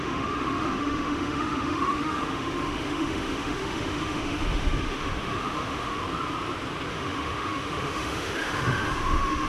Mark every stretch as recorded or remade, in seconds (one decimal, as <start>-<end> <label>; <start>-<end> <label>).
0.0-6.0 remade; 6.0-6.9 recorded; 6.9-9.5 remade